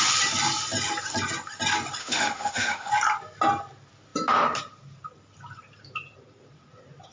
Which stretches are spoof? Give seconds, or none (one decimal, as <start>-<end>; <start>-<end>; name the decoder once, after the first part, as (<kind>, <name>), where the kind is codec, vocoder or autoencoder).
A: 2.0-2.9 (autoencoder, DAC-VAE)